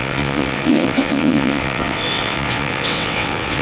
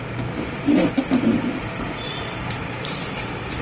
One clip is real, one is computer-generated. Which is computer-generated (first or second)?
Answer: first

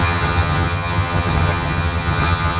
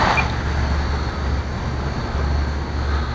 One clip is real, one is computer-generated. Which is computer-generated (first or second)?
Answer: first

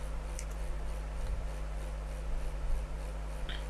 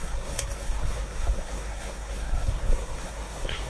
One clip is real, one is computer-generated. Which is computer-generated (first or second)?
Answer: second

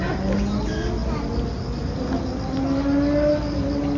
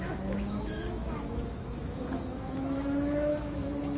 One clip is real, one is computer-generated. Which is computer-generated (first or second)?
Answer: second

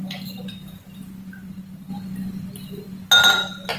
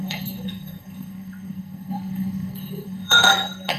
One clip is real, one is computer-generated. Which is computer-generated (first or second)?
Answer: second